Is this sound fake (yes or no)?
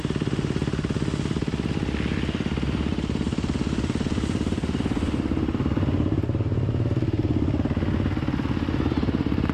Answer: no